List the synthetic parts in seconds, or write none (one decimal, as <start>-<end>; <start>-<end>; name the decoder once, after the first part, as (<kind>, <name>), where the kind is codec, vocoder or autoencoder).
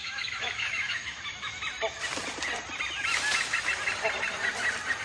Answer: 0.0-1.7 (autoencoder, DAC-VAE)